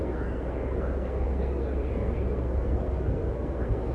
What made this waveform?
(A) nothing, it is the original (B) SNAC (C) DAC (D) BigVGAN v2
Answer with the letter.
B